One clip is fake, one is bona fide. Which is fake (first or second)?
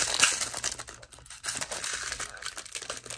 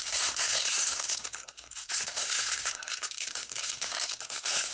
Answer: second